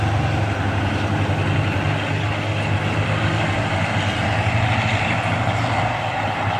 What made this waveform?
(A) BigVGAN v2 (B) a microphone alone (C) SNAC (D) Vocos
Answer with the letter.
B